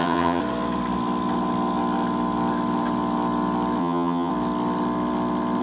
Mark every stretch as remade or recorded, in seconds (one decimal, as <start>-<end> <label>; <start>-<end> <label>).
0.0-0.4 remade; 0.4-3.8 recorded; 3.8-4.3 remade; 4.3-5.6 recorded